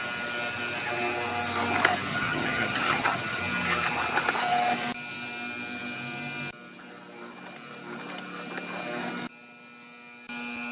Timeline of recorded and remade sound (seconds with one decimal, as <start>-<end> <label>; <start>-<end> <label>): 0.0-2.1 recorded; 2.1-3.4 remade; 3.4-10.7 recorded